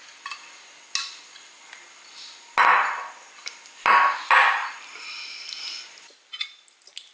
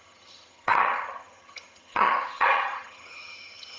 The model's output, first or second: second